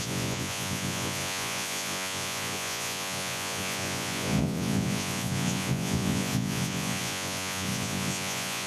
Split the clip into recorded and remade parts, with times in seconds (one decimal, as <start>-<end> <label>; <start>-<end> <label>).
0.0-8.7 remade